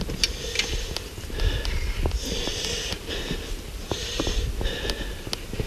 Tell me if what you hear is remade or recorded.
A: recorded